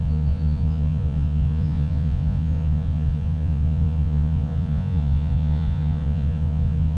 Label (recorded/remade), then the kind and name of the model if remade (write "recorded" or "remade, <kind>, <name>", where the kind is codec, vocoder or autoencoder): remade, vocoder, Vocos